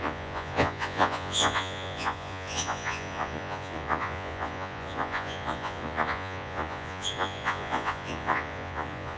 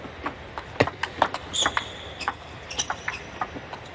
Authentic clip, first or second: second